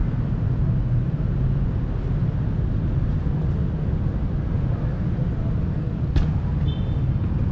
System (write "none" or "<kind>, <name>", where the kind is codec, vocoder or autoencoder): none